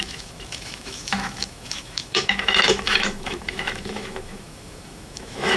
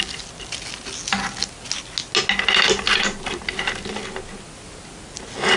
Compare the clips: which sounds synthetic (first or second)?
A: first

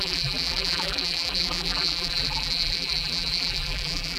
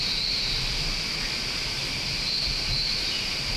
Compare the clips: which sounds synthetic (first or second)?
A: first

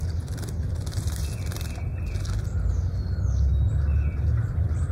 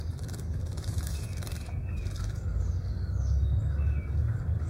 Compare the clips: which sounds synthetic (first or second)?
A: second